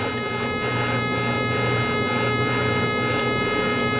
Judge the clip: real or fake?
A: real